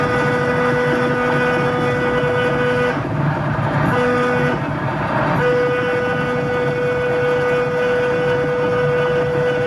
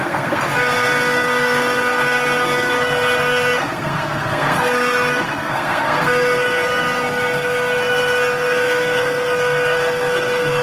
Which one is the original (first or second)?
first